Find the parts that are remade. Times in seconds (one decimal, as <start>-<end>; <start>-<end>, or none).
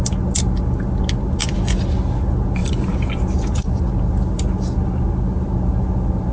1.4-1.9; 2.6-3.8